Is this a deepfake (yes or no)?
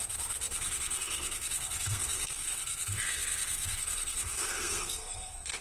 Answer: yes